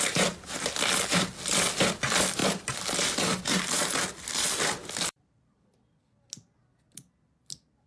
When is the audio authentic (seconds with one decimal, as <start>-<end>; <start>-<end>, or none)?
0.0-2.4; 5.8-7.9